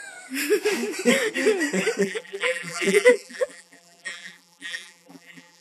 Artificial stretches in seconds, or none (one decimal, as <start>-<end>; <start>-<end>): 2.0-5.6